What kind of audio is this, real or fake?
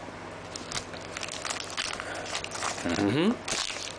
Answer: real